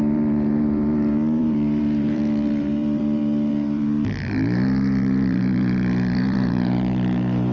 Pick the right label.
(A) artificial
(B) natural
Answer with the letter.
A